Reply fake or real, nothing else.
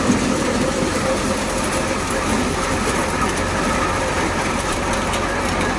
real